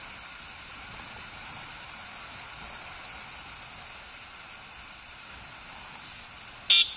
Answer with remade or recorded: recorded